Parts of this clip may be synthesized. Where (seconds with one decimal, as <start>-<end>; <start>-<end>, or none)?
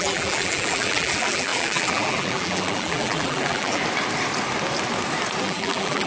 0.0-3.8; 5.4-6.1